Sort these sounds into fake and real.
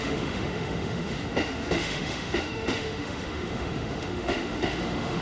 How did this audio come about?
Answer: fake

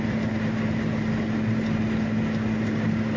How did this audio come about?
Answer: real